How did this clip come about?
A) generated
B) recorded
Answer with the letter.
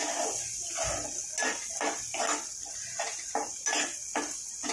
B